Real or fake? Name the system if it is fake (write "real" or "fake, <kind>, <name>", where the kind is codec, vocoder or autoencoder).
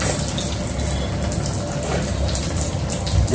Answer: real